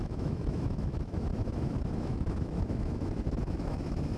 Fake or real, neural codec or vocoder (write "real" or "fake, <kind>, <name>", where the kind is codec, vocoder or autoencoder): fake, autoencoder, DAC-VAE